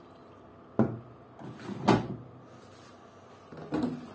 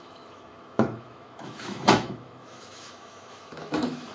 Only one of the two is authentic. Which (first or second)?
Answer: first